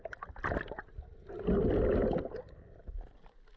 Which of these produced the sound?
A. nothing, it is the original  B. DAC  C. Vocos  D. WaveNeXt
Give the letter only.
A